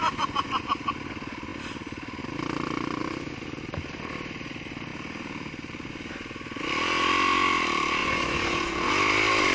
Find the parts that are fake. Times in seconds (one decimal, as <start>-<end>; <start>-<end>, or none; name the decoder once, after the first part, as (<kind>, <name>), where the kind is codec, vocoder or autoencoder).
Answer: 0.0-0.6 (vocoder, Vocos); 8.0-8.9